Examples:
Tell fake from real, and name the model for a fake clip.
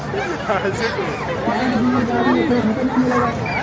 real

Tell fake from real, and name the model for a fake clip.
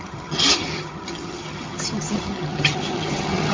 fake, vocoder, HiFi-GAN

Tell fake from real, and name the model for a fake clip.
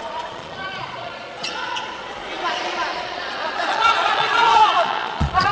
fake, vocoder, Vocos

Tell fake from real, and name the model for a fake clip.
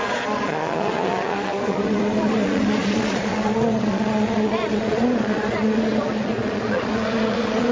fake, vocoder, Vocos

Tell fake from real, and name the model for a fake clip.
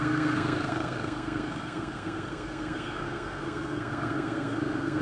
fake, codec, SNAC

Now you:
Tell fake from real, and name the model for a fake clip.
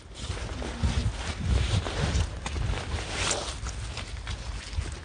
real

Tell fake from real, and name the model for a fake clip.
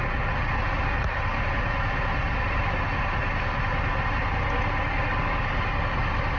real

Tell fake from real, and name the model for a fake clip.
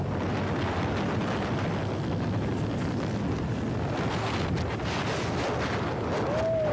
real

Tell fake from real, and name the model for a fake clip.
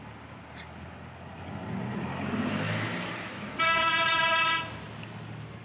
real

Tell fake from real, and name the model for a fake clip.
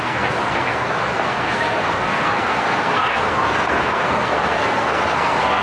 fake, codec, SNAC